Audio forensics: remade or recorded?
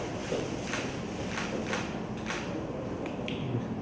recorded